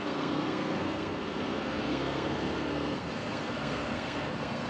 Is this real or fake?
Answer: fake